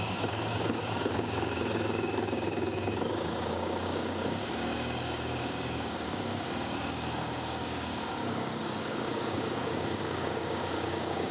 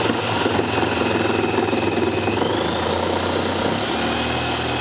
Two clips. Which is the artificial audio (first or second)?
first